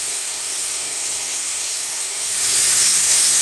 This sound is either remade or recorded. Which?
remade